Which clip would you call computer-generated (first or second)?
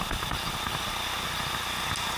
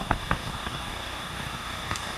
second